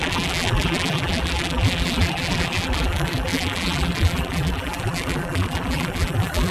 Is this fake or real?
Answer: fake